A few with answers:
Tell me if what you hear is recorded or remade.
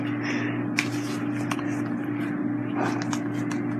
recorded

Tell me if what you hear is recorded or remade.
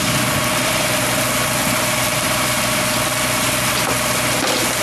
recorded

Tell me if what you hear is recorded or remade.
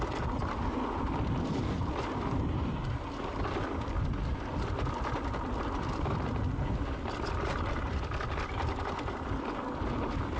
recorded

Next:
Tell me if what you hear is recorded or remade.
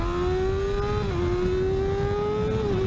recorded